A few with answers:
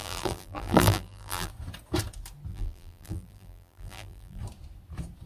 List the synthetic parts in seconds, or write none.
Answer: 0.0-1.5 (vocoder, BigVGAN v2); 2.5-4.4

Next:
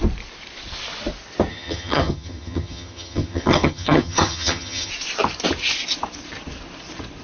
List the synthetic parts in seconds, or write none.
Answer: 1.5-4.9 (vocoder, HiFi-GAN)

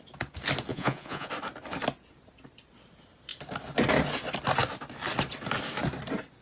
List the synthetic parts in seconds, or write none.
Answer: 0.7-1.3 (vocoder, Vocos)

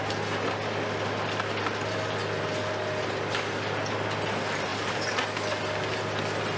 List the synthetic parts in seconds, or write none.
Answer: none

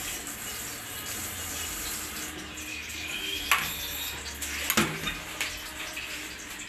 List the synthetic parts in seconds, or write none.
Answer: 2.7-3.4 (codec, DAC)

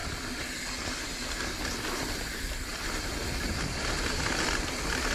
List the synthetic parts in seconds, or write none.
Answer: none

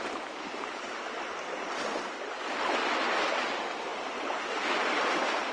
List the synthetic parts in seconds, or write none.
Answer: none